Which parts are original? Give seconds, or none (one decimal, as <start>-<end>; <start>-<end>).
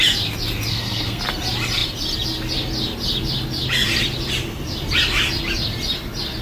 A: 0.0-0.7; 1.2-6.4